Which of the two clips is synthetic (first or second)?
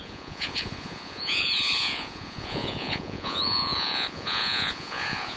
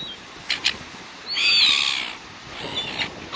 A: first